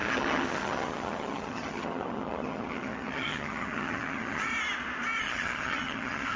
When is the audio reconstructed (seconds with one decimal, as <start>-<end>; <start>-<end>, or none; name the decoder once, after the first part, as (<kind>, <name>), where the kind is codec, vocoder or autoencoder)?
0.0-4.5 (vocoder, HiFi-GAN); 5.2-6.4